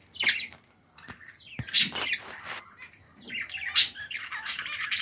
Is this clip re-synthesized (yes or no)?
no